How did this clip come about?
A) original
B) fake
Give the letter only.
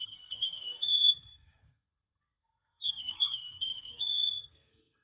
B